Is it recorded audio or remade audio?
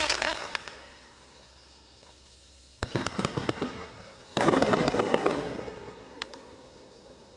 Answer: remade